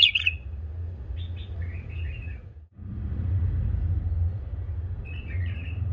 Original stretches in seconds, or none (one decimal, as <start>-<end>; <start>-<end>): 3.7-4.3